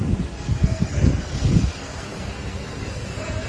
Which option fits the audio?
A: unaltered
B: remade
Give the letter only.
B